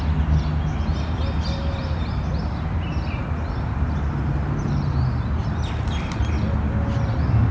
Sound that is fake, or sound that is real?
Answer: real